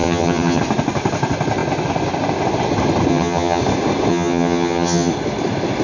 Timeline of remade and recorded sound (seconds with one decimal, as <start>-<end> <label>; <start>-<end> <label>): 0.0-0.6 remade; 0.6-3.1 recorded; 3.1-3.6 remade; 3.6-4.1 recorded; 4.1-5.1 remade; 5.1-5.8 recorded